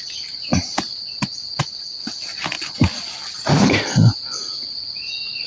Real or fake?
real